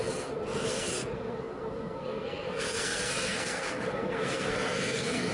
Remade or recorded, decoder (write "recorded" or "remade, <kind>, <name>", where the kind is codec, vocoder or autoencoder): remade, codec, SNAC